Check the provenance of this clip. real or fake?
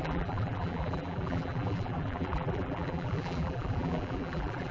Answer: fake